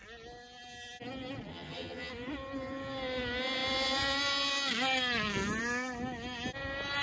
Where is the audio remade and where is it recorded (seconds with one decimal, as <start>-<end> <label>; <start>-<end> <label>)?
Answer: 0.0-1.5 recorded; 1.5-2.1 remade; 2.1-7.0 recorded